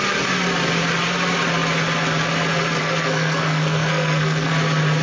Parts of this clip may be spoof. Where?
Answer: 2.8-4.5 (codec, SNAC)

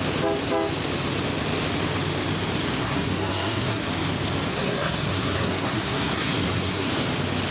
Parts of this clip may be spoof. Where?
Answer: 2.8-3.9 (codec, SNAC); 4.5-6.9

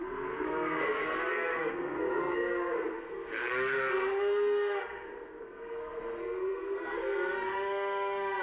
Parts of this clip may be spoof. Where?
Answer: 0.0-8.4 (codec, SNAC)

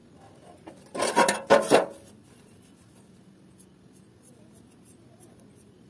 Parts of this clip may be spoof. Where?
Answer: none